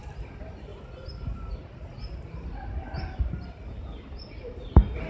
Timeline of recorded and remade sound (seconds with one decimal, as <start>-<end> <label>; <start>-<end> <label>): 0.0-5.1 recorded